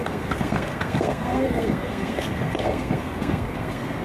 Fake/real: fake